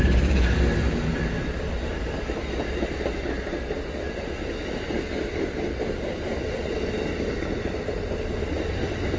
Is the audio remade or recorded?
recorded